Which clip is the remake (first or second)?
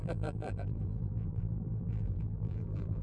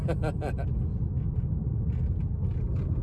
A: first